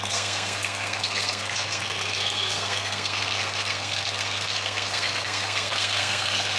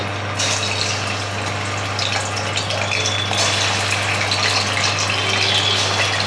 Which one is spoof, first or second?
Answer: first